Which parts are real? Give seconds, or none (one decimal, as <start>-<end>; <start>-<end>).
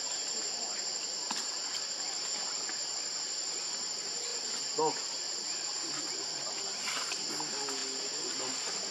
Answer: 0.0-8.9